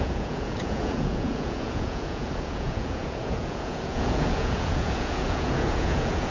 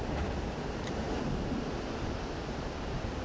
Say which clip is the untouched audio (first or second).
second